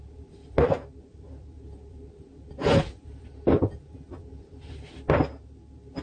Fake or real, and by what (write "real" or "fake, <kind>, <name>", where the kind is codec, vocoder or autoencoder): real